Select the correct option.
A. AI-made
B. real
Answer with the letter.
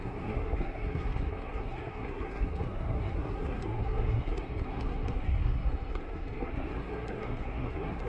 A